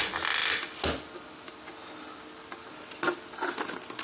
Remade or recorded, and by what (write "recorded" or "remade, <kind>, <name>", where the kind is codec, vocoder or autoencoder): recorded